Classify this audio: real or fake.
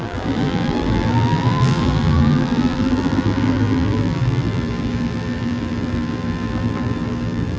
fake